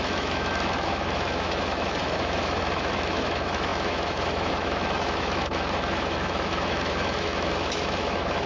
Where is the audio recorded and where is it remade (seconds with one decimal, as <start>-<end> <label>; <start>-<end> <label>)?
0.0-8.5 remade